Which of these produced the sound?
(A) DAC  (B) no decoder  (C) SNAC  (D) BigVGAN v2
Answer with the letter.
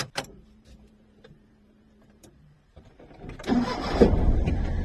D